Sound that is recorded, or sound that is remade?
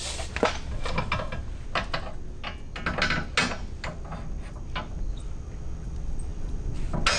recorded